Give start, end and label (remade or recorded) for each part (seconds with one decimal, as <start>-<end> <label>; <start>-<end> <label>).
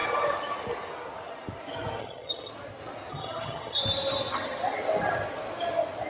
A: 0.0-2.0 recorded; 2.0-2.5 remade; 2.5-3.1 recorded; 3.1-3.8 remade; 3.8-6.1 recorded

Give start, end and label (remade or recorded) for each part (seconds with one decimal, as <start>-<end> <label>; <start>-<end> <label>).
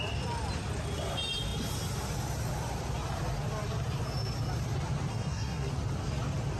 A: 0.0-5.1 recorded; 5.1-5.7 remade; 5.7-6.6 recorded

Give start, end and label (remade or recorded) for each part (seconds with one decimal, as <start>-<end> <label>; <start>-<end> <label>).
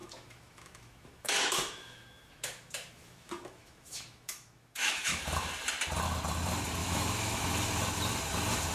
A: 0.0-5.2 remade; 5.2-6.8 recorded; 6.8-7.5 remade; 7.5-8.7 recorded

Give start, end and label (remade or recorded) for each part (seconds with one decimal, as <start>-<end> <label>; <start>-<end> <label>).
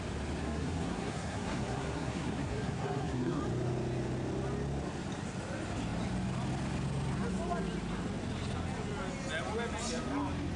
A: 0.0-0.4 recorded; 0.4-3.4 remade; 3.4-10.6 recorded